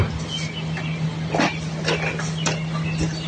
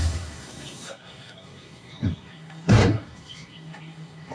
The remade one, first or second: second